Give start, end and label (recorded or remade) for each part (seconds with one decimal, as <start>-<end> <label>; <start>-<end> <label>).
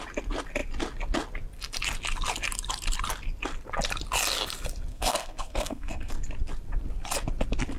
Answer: 0.0-4.9 recorded; 4.9-6.1 remade; 6.1-7.8 recorded